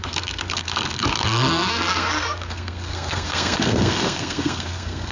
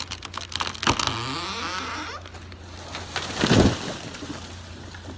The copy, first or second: first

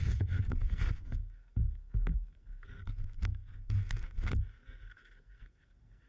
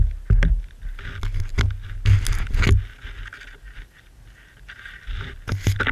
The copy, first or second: first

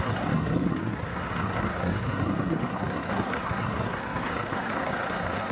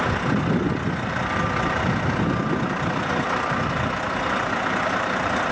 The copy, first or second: first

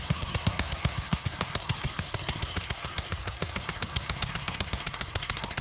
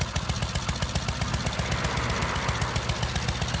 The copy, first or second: first